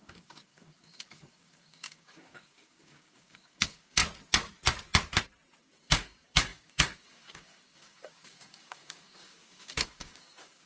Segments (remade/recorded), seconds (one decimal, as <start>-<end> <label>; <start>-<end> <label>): 0.0-4.0 remade; 4.0-5.6 recorded; 5.6-10.7 remade